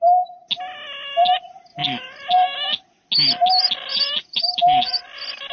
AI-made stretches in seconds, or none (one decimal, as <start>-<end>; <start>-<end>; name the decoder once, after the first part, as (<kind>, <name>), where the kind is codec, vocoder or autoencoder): 3.9-5.0 (vocoder, BigVGAN v2)